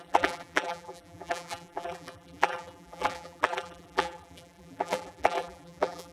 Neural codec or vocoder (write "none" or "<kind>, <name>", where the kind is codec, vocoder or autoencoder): vocoder, BigVGAN v2